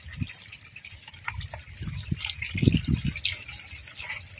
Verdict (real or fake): real